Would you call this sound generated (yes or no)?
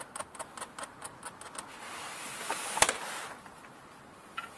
no